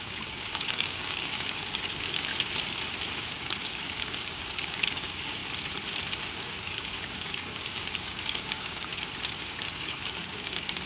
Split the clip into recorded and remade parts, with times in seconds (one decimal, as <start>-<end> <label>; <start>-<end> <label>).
0.0-2.3 remade; 2.3-3.2 recorded; 3.2-5.4 remade; 5.4-6.3 recorded; 6.3-8.9 remade; 8.9-9.4 recorded; 9.4-10.9 remade